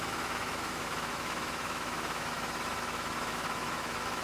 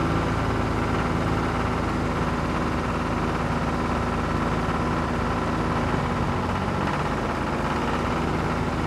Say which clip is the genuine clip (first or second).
second